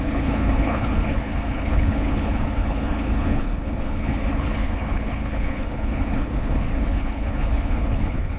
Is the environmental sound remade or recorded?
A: remade